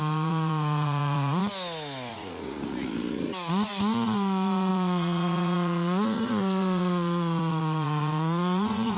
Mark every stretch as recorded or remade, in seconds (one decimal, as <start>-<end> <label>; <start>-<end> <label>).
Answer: 0.0-1.4 remade; 1.4-2.1 recorded; 2.1-9.0 remade